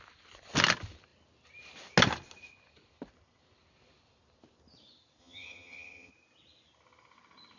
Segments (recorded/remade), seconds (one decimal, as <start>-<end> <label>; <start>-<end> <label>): 0.0-5.2 recorded; 5.2-6.1 remade; 6.1-7.6 recorded

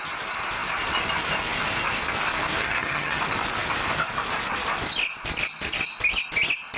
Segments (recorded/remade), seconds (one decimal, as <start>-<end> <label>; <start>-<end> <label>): 0.0-2.6 recorded; 2.6-3.2 remade; 3.2-6.8 recorded